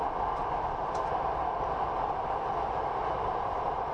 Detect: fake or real real